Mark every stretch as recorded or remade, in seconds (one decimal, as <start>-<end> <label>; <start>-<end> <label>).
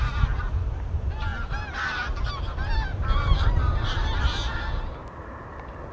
0.0-5.9 recorded